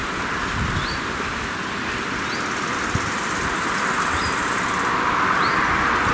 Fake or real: real